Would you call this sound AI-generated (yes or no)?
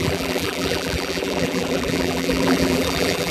yes